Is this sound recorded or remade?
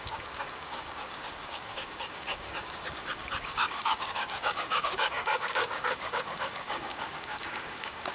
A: remade